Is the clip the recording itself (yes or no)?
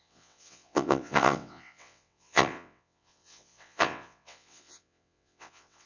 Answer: no